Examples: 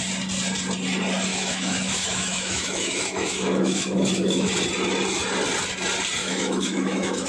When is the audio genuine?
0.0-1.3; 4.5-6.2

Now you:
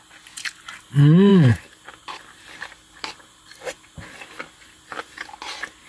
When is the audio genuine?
0.0-5.9

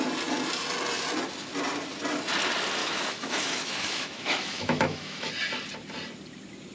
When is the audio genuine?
0.0-2.8; 5.3-6.7

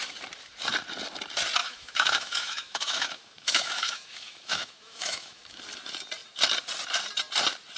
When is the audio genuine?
0.0-1.6; 5.6-7.8

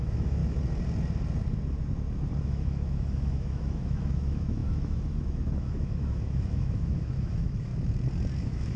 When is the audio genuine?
0.4-2.4; 7.7-8.4

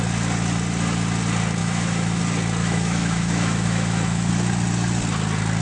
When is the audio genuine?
0.0-1.6; 2.2-2.6; 4.3-5.6